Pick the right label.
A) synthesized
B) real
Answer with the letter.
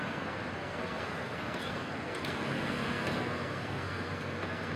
A